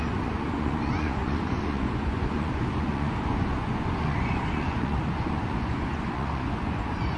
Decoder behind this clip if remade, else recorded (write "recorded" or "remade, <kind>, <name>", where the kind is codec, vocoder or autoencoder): remade, vocoder, Vocos